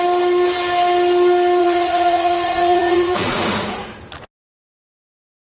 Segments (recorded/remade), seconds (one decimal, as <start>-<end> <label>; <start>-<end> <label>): 0.0-1.6 recorded; 1.6-3.9 remade; 3.9-5.6 recorded

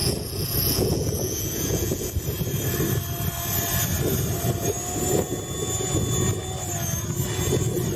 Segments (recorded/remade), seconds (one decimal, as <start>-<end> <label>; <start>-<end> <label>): 0.0-2.2 remade; 2.2-8.0 recorded

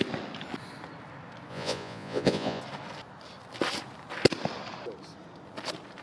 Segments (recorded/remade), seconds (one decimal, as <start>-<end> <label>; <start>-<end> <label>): 0.0-1.5 recorded; 1.5-2.6 remade; 2.6-6.0 recorded

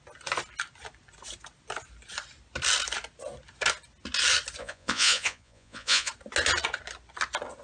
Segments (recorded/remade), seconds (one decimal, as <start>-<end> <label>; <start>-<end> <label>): 0.0-4.6 recorded; 4.6-6.1 remade; 6.1-7.6 recorded

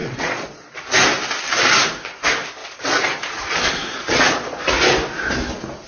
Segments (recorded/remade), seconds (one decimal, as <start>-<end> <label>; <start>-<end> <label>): 0.0-0.8 remade; 0.8-2.6 recorded; 2.6-4.7 remade; 4.7-5.9 recorded